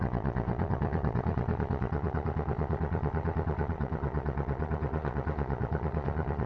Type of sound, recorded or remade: remade